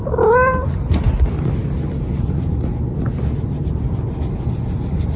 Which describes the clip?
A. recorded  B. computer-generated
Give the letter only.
A